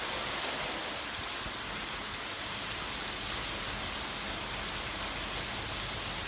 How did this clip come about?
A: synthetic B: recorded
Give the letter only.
B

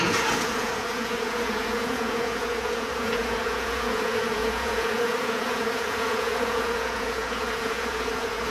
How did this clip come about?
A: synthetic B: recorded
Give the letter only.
A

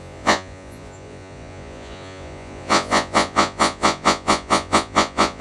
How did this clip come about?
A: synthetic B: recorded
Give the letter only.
A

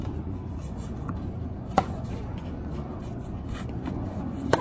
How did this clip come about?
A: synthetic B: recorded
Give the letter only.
A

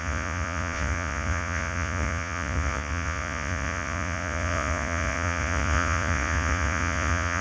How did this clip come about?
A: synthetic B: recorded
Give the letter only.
A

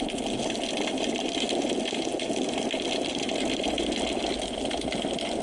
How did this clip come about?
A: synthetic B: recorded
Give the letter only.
B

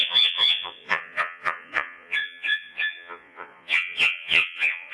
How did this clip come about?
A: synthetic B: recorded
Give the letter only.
A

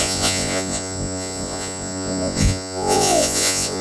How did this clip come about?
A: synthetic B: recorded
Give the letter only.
A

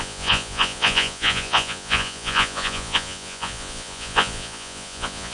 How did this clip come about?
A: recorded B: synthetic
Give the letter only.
B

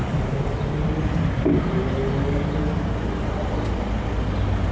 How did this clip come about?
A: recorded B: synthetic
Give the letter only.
A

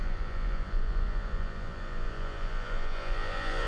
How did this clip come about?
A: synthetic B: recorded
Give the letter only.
A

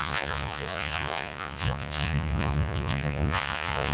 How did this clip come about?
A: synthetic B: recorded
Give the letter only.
A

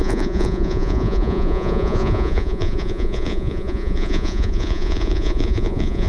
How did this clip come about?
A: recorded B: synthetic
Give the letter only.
B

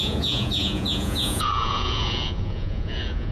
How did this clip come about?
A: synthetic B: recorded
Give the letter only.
A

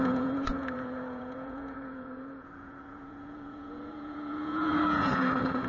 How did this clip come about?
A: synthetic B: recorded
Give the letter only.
A